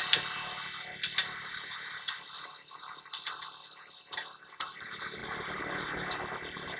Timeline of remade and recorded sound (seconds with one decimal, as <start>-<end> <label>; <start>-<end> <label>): 0.0-1.2 recorded; 1.2-4.7 remade; 4.7-5.2 recorded; 5.2-6.8 remade